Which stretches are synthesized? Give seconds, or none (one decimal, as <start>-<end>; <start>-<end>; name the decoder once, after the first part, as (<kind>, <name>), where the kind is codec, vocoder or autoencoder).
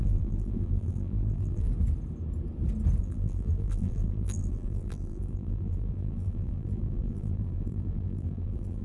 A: 0.0-1.7 (vocoder, BigVGAN v2); 3.0-8.8